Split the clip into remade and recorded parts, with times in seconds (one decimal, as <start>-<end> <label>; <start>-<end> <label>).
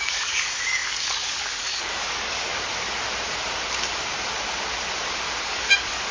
0.0-2.5 remade; 2.5-5.4 recorded; 5.4-6.1 remade